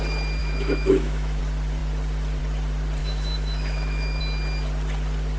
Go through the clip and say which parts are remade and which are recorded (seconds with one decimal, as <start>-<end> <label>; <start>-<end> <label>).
0.0-0.4 recorded; 0.4-1.4 remade; 1.4-3.0 recorded; 3.0-4.2 remade; 4.2-5.4 recorded